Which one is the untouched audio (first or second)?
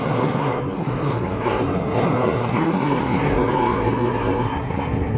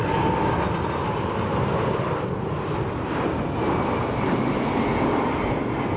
second